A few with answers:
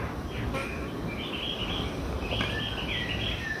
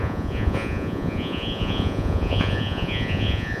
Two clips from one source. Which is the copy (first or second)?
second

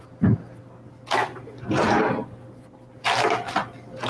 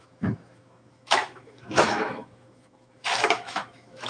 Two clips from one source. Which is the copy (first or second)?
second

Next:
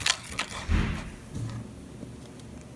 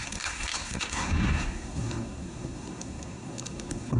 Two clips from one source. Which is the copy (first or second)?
second